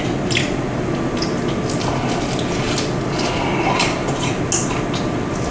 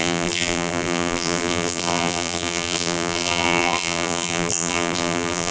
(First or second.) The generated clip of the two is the second